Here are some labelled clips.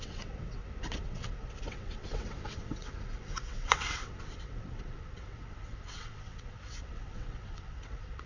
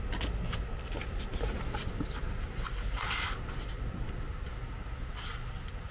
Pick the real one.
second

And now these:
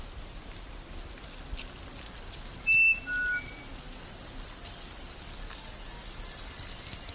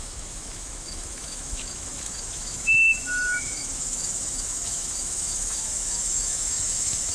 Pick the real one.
first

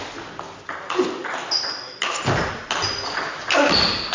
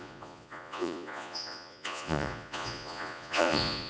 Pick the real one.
first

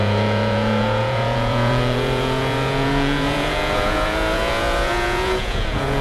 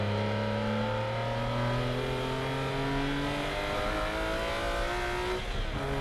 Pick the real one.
second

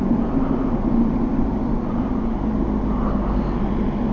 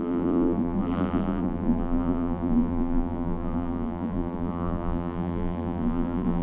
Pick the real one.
first